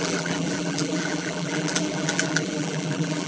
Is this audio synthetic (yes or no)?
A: yes